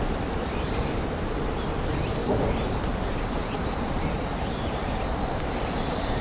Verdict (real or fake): real